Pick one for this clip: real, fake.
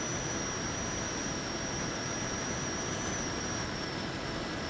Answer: fake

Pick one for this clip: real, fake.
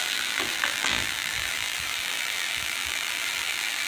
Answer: fake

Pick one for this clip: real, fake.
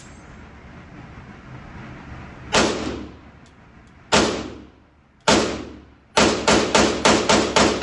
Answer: real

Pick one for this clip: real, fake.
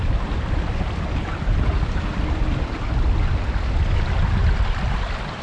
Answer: real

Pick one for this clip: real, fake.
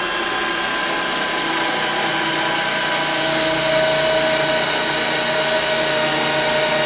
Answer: real